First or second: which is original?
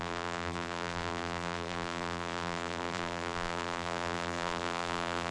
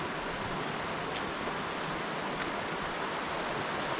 second